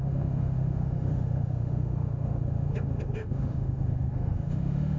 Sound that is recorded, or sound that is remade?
remade